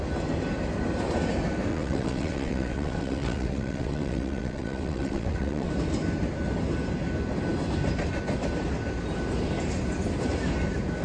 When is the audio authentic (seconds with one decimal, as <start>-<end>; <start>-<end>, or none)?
0.0-1.7; 5.7-11.0